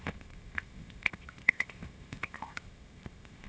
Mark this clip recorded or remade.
remade